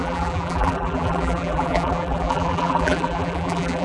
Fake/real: fake